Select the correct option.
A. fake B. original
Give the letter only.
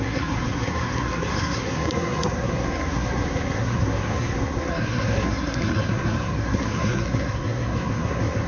A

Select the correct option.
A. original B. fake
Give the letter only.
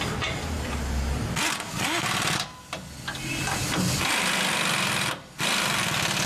A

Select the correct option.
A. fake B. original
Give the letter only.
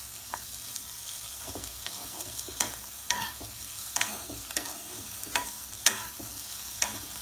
A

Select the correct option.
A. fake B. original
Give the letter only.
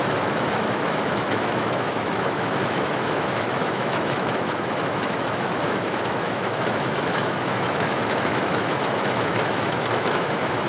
A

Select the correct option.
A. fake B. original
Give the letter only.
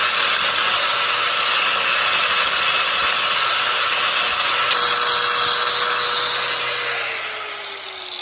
B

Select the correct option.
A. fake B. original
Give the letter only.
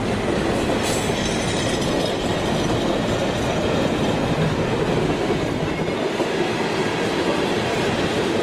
B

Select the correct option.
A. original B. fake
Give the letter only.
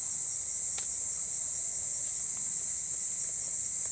A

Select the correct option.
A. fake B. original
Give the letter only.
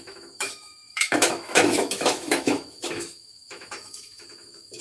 A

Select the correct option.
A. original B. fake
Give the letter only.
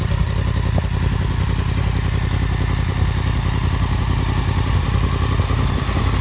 A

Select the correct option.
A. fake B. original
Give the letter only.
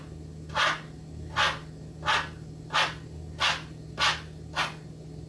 B